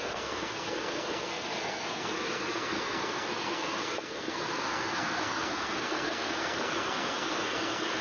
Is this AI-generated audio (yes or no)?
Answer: yes